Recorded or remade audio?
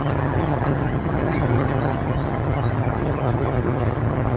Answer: remade